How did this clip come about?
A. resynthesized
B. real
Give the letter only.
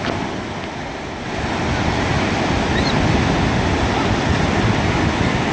B